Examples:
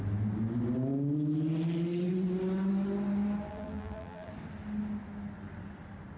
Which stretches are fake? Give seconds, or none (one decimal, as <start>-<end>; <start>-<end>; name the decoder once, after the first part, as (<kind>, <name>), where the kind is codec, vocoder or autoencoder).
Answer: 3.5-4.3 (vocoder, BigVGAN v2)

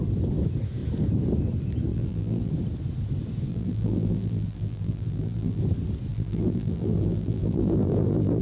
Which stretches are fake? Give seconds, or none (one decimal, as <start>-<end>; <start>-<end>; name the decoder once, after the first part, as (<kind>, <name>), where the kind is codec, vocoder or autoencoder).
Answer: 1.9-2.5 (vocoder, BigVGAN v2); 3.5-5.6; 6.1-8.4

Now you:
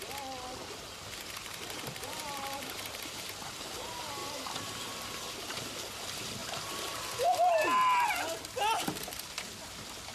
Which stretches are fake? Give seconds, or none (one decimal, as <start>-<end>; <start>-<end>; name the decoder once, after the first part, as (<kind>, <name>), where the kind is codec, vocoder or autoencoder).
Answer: 0.6-3.6 (vocoder, BigVGAN v2); 4.2-5.6; 6.4-7.5